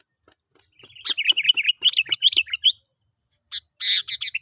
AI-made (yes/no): no